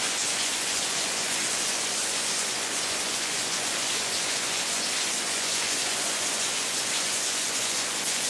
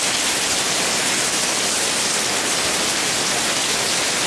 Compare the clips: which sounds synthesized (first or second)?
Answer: first